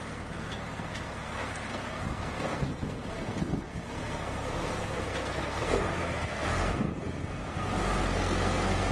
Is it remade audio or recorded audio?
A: remade